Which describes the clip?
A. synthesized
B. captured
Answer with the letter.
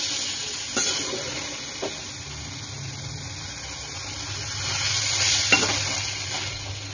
B